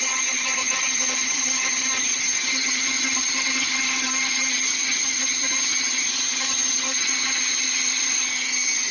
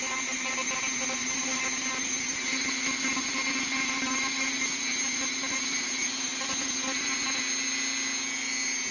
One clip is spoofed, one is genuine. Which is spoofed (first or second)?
first